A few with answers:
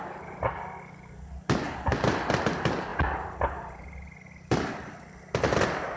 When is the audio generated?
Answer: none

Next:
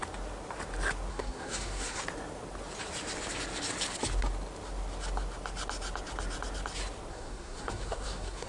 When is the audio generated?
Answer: 1.1-2.0 (codec, SNAC); 7.1-8.5

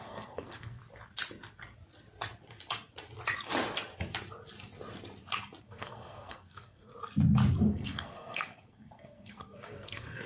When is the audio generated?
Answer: 0.0-0.8 (codec, SNAC); 5.6-6.9; 7.7-10.3

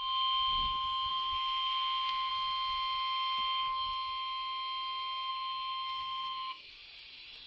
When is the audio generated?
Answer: 1.1-2.3 (codec, SNAC); 5.3-6.7

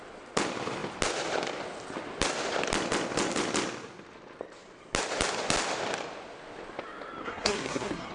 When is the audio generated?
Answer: 7.2-8.1 (codec, SNAC)